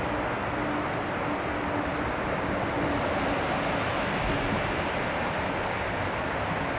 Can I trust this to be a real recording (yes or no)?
yes